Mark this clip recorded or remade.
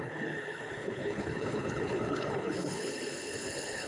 remade